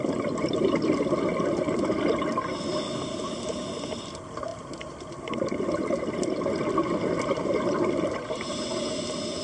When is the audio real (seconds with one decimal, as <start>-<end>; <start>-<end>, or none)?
0.0-9.4